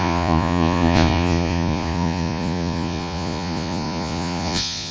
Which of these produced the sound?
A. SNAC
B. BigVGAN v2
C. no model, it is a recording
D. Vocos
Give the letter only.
D